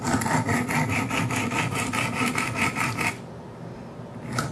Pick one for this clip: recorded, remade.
recorded